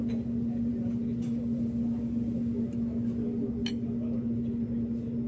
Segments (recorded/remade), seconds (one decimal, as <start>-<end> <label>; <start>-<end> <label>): 0.0-5.3 recorded